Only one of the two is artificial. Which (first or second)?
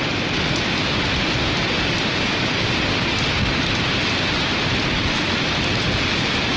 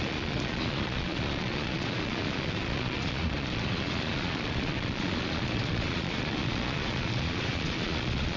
second